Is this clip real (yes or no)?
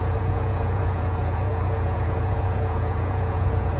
no